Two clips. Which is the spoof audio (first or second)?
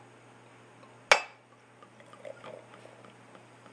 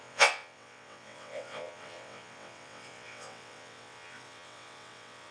second